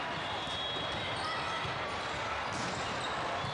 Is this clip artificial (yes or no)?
no